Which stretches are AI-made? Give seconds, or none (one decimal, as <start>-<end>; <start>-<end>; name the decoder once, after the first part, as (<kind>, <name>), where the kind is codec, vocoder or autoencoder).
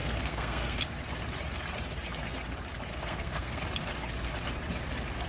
0.0-0.8 (codec, SNAC); 2.9-3.6